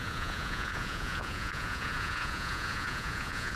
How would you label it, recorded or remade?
remade